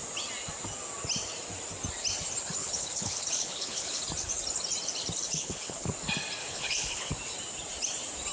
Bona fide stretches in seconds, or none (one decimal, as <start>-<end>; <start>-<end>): 0.0-2.6; 4.0-5.3; 5.9-6.4; 7.1-8.3